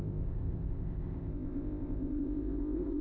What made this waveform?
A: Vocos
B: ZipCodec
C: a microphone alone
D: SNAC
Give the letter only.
B